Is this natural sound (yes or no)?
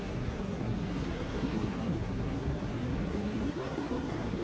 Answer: no